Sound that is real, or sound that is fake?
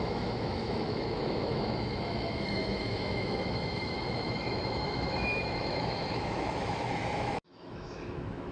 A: fake